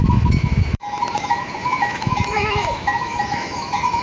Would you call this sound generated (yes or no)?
yes